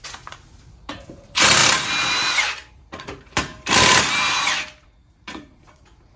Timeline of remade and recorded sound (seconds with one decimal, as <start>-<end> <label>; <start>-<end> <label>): 0.0-1.6 remade; 1.6-2.7 recorded; 2.7-3.5 remade; 3.5-4.8 recorded; 4.8-6.2 remade